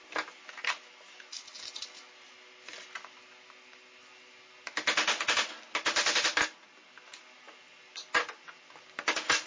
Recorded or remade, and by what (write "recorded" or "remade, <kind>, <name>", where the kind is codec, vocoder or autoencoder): recorded